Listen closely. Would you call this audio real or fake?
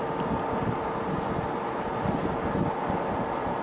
real